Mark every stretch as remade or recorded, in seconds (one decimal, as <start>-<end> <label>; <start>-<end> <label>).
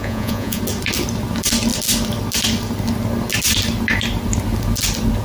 0.0-0.6 remade; 0.6-5.2 recorded